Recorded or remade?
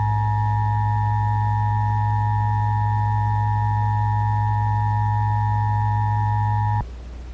recorded